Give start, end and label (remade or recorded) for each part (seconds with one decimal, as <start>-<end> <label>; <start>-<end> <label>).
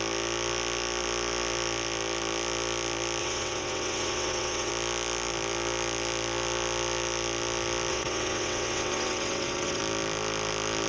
0.0-3.2 recorded; 3.2-4.7 remade; 4.7-7.9 recorded; 7.9-9.8 remade; 9.8-10.9 recorded